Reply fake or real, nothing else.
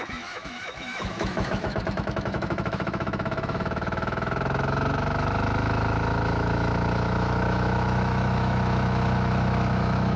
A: fake